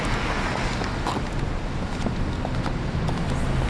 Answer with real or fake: real